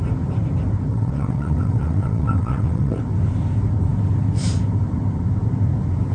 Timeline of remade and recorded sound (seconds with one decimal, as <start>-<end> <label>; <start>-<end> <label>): 0.0-0.9 recorded; 0.9-3.0 remade; 3.0-6.1 recorded